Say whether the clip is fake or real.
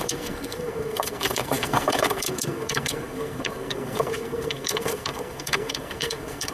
fake